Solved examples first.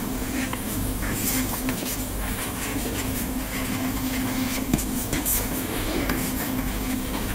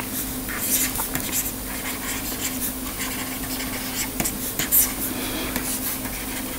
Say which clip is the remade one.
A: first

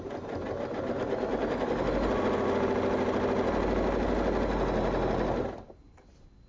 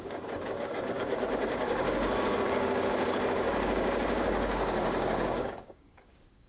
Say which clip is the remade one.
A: second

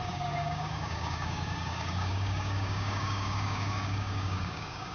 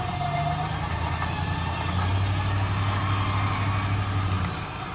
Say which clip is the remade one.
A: first